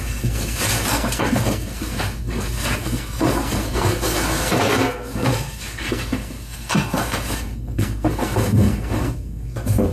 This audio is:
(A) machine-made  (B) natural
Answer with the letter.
A